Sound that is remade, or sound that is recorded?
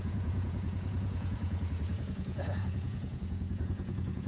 remade